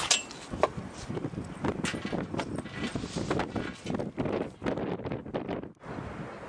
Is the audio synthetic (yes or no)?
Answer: no